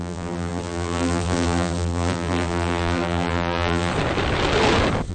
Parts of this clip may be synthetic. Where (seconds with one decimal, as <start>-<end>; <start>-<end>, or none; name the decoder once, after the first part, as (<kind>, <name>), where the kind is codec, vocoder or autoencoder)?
0.0-3.9 (vocoder, BigVGAN v2)